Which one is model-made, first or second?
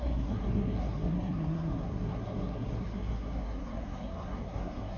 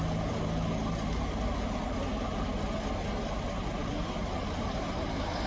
first